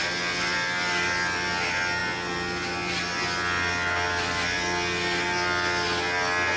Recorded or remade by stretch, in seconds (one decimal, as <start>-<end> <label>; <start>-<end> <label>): 0.0-6.6 recorded